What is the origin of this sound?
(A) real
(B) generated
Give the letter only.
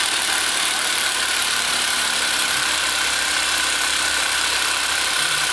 B